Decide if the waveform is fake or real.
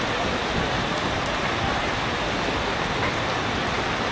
real